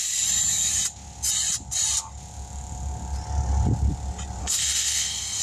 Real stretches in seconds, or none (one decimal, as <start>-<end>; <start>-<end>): 0.0-4.4